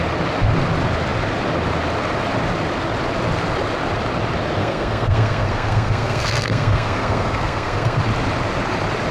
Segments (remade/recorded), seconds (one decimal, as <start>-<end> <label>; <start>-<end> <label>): 0.0-4.6 recorded; 4.6-8.0 remade; 8.0-9.1 recorded

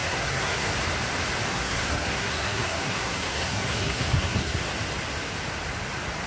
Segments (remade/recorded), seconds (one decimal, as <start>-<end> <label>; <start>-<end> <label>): 0.0-0.7 remade; 0.7-1.5 recorded; 1.5-4.6 remade; 4.6-6.3 recorded